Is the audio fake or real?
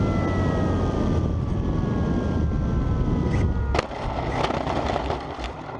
real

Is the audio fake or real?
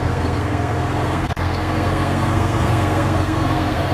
fake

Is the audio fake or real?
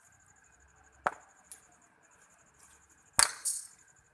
real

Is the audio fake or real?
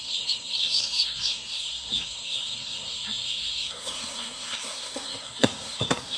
fake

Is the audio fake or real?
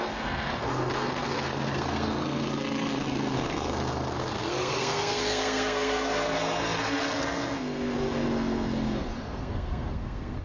fake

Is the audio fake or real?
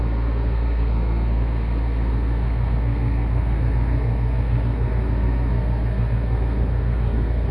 fake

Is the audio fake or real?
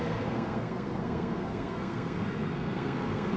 fake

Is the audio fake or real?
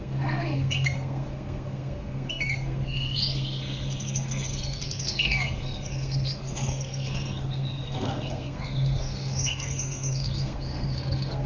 fake